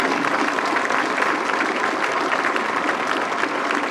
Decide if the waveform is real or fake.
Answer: real